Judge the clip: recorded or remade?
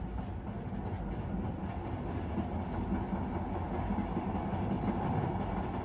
recorded